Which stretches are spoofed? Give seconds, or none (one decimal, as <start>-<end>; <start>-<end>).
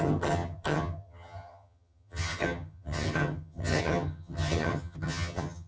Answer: 0.0-5.7